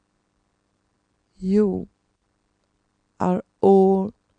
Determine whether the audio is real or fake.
real